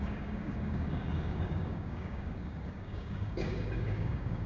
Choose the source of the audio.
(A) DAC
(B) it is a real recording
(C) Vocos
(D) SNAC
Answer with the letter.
A